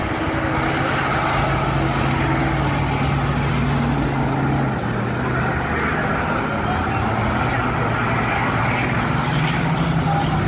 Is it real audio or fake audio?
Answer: real